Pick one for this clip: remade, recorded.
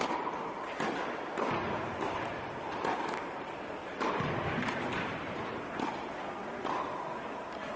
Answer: recorded